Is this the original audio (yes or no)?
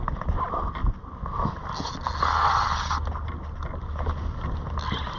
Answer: yes